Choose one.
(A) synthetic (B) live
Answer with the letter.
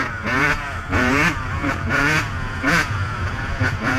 A